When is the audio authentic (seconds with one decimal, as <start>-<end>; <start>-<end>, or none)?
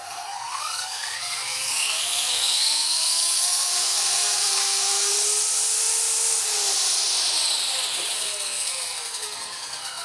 5.1-8.1